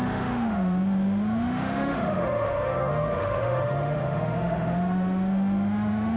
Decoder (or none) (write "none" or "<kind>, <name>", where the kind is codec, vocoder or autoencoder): autoencoder, DAC-VAE